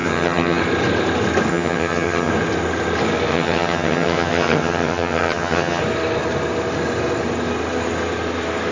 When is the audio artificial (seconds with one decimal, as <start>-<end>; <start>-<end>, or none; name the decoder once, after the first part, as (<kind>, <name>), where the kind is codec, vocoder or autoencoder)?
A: 0.0-0.6 (vocoder, HiFi-GAN); 1.5-2.3; 3.3-5.8